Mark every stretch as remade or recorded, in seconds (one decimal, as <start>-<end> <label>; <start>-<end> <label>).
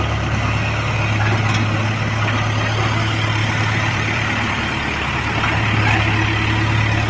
0.0-3.4 recorded; 3.4-5.4 remade; 5.4-7.1 recorded